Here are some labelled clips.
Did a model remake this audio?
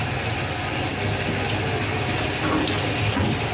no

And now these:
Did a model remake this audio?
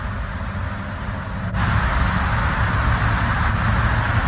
no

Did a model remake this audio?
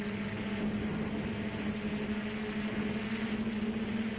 no